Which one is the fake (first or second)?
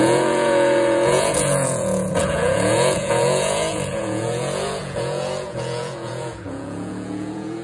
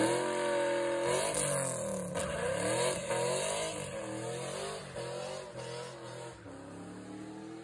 first